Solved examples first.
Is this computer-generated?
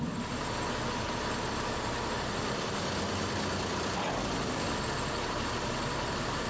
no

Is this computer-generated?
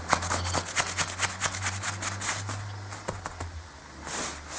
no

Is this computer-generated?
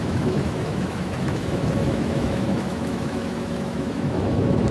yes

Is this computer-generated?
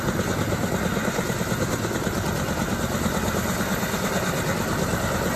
no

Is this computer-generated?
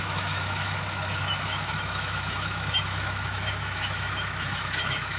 yes